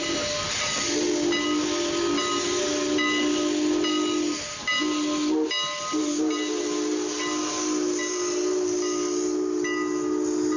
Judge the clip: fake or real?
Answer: real